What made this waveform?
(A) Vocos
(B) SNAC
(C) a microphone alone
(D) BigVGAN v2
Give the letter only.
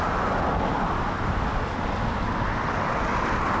C